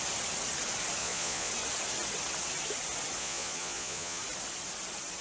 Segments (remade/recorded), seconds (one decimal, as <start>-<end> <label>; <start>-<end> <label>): 0.0-1.0 recorded; 1.0-1.5 remade; 1.5-3.2 recorded; 3.2-4.2 remade; 4.2-5.2 recorded